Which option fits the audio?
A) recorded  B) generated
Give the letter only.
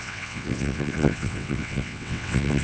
B